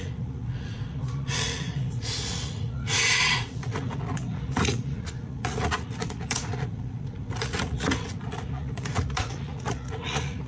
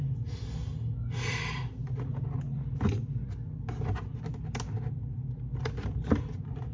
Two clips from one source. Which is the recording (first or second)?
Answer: second